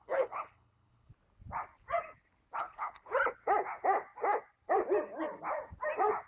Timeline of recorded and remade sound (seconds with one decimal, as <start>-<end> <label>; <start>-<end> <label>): 0.0-1.1 remade; 1.1-2.6 recorded; 2.6-3.2 remade; 3.2-6.3 recorded

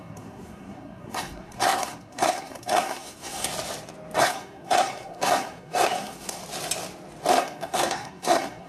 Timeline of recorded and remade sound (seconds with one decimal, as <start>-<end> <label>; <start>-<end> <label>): 0.0-3.5 remade; 3.5-4.2 recorded; 4.2-6.4 remade; 6.4-7.4 recorded; 7.4-8.7 remade

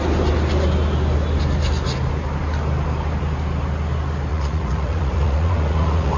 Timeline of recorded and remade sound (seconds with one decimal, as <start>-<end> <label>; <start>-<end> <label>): 0.0-4.3 recorded; 4.3-6.2 remade

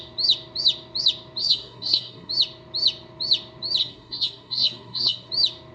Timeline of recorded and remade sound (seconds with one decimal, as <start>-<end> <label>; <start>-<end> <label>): 0.0-1.4 recorded; 1.4-2.3 remade; 2.3-3.8 recorded; 3.8-5.3 remade; 5.3-5.7 recorded

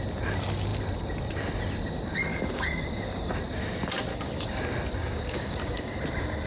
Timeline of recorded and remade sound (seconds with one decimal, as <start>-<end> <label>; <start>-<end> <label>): 0.0-2.3 recorded; 2.3-3.3 remade; 3.3-4.1 recorded; 4.1-4.6 remade; 4.6-5.0 recorded; 5.0-6.0 remade; 6.0-6.5 recorded

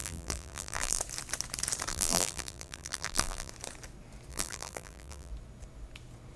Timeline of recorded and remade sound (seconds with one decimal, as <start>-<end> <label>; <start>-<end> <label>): 0.0-1.0 remade; 1.0-1.9 recorded; 1.9-3.5 remade; 3.5-4.3 recorded; 4.3-5.3 remade; 5.3-6.4 recorded

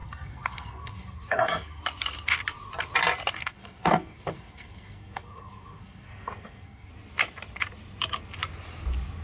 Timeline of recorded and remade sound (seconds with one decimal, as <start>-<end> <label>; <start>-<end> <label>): 0.0-1.8 remade; 1.8-3.4 recorded; 3.4-6.9 remade; 6.9-9.2 recorded